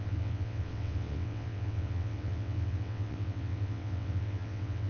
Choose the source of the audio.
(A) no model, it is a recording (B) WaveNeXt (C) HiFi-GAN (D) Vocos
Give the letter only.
B